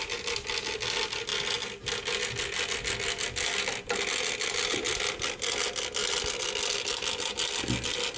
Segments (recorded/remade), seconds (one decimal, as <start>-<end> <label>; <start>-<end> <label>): 0.0-8.2 recorded